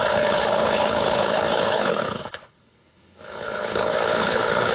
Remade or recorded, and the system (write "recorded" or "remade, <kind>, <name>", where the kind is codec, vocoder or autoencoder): remade, codec, HILCodec